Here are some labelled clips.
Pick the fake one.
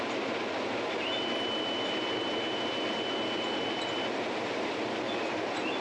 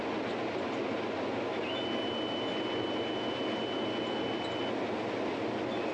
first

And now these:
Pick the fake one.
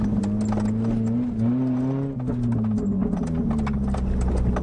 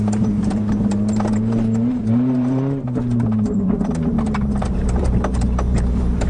second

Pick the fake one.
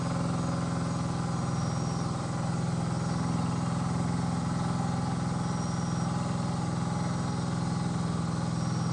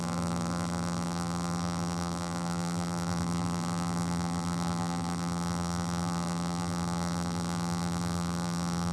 second